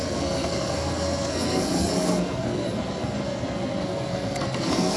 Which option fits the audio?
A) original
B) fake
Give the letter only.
B